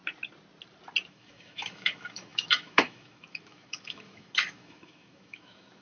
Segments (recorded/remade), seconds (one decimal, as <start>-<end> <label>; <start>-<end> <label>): 0.0-1.1 recorded; 1.1-5.8 remade